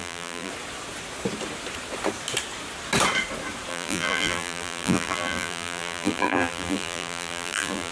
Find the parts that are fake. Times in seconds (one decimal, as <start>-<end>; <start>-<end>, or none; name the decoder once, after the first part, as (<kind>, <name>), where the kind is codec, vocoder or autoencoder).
0.0-0.5 (vocoder, BigVGAN v2); 3.7-7.9